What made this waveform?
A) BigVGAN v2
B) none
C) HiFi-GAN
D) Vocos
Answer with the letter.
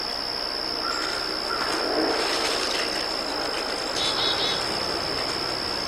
B